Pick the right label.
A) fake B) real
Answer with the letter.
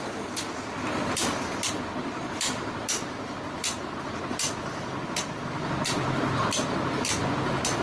B